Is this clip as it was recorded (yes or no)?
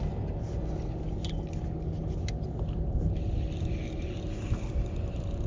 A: yes